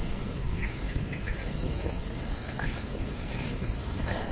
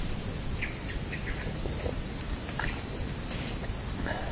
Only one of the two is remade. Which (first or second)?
first